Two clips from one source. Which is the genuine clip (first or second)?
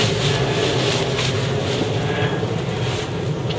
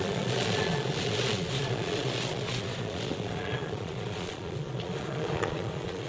first